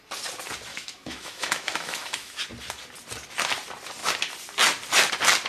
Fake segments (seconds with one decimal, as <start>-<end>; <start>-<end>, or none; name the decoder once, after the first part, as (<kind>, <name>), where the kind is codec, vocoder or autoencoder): 0.7-2.4 (autoencoder, DAC-VAE)